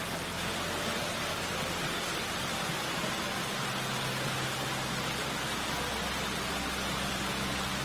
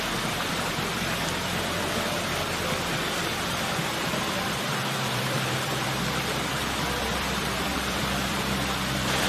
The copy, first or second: second